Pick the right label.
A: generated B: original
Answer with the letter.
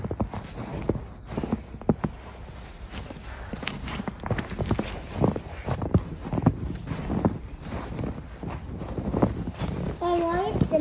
B